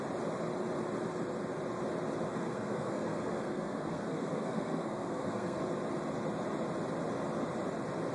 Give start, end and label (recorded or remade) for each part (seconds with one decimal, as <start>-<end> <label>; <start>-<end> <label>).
0.0-2.3 recorded; 2.3-5.6 remade; 5.6-8.1 recorded